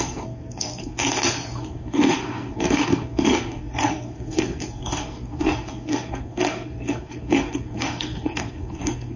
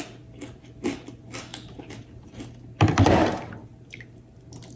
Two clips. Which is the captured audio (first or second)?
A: second